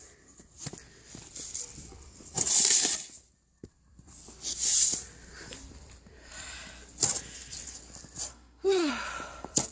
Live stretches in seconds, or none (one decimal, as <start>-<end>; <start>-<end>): 0.0-8.3; 8.9-9.7